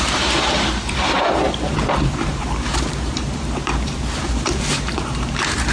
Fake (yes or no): yes